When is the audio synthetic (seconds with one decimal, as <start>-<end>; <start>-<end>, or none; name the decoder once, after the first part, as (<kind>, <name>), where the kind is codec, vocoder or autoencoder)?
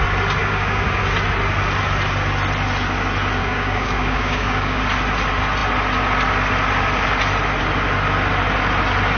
0.4-1.0 (codec, DAC); 3.4-4.8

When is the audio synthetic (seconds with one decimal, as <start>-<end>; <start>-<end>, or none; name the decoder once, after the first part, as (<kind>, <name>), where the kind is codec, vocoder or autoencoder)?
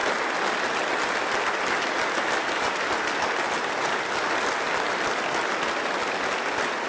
none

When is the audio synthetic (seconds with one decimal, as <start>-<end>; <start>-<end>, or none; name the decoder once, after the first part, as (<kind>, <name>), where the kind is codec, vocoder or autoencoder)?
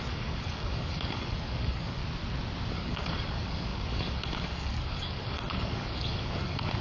0.0-2.0 (codec, DAC); 2.7-6.8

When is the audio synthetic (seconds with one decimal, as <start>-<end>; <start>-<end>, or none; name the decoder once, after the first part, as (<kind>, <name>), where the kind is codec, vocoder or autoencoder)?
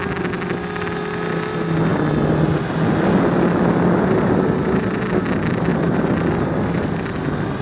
none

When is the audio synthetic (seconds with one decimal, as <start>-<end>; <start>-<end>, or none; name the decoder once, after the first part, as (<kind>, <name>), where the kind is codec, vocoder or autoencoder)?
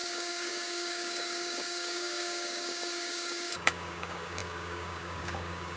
0.0-5.8 (codec, DAC)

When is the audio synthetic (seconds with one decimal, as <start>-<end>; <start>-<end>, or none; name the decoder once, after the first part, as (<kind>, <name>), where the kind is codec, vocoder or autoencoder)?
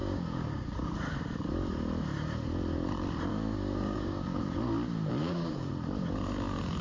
0.0-0.9 (codec, DAC); 3.3-4.4; 5.2-5.7